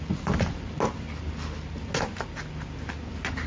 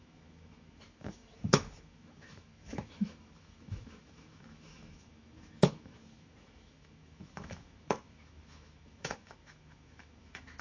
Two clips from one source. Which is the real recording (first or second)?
first